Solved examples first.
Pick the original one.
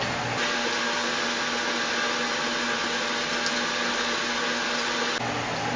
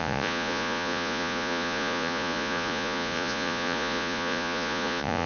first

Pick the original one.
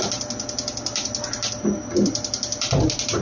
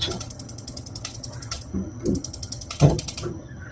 first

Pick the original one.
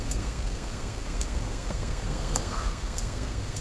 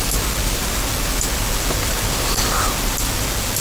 second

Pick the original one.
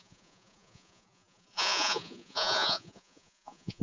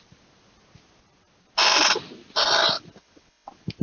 second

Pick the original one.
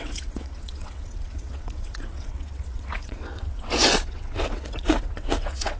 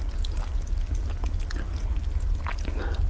second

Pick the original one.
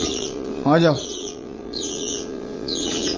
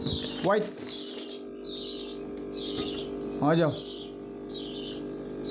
second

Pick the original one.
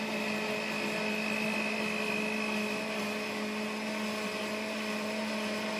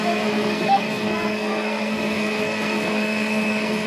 first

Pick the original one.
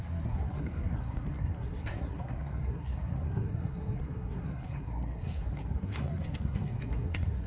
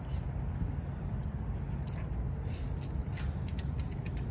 second